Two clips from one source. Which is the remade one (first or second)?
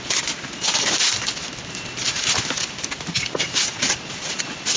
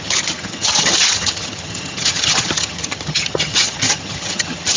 second